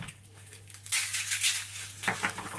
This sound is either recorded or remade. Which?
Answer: remade